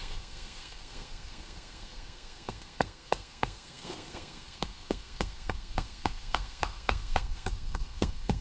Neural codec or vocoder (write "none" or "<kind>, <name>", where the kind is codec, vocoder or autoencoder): codec, SNAC